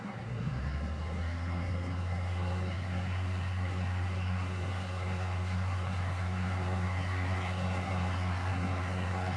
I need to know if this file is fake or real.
fake